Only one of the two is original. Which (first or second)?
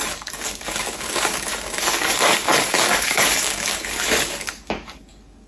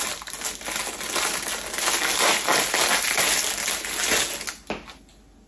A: second